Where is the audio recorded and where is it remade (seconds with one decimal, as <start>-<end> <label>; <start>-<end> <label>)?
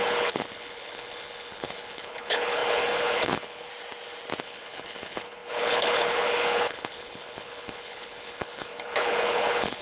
0.0-3.7 remade; 3.7-4.4 recorded; 4.4-9.8 remade